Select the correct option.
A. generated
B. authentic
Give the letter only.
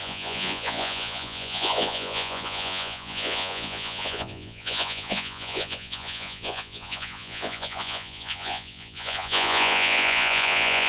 A